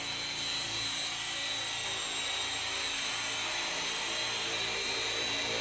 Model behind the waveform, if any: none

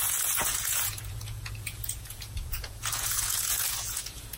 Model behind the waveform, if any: vocoder, Vocos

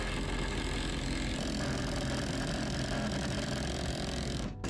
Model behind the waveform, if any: none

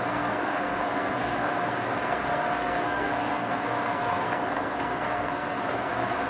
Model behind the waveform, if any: codec, SNAC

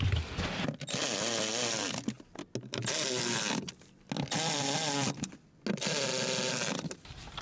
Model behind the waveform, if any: none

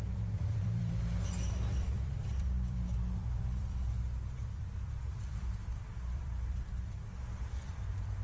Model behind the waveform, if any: vocoder, BigVGAN v2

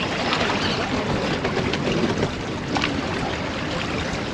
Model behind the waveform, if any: none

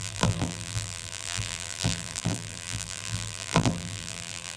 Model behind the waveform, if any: vocoder, BigVGAN v2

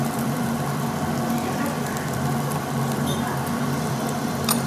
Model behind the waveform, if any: vocoder, BigVGAN v2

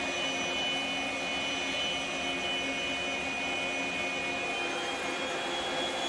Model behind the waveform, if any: none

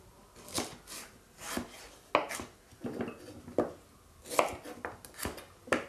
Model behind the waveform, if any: none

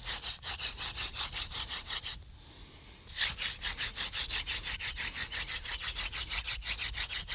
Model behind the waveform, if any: none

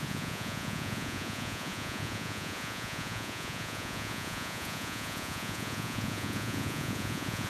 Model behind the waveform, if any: vocoder, Vocos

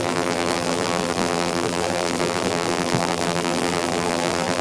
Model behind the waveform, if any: vocoder, BigVGAN v2